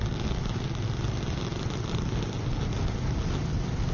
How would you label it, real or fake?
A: real